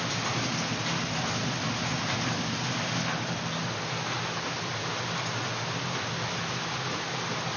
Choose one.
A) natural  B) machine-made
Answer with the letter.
A